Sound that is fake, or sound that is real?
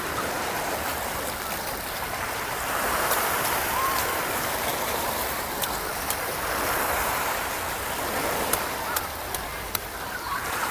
fake